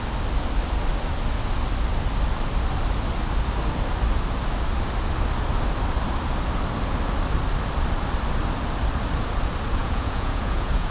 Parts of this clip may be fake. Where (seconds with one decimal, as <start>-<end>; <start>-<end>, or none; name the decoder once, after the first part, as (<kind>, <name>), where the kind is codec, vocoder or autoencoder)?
9.8-10.9 (vocoder, Vocos)